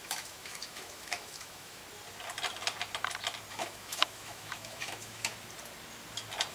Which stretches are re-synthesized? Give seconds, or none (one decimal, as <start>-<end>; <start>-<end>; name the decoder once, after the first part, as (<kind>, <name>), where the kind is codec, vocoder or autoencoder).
0.0-1.8 (autoencoder, DAC-VAE); 3.5-5.3